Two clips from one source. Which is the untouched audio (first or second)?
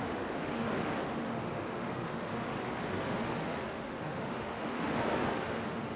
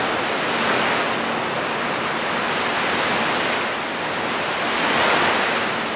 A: second